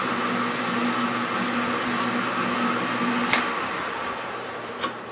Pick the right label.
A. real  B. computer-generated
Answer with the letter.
A